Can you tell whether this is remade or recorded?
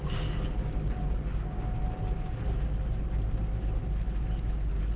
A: recorded